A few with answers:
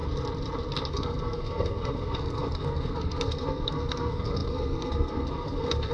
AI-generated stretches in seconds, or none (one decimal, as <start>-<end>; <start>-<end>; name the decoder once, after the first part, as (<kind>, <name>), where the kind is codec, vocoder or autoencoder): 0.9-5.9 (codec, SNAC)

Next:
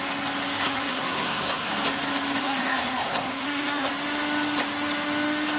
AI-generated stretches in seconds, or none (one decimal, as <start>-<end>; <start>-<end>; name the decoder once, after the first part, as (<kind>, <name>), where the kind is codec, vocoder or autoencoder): 0.6-1.7 (codec, SNAC); 2.4-3.9

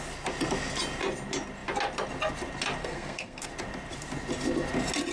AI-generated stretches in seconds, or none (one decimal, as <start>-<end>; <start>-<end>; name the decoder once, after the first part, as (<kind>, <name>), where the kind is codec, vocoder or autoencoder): 2.8-3.5 (codec, SNAC)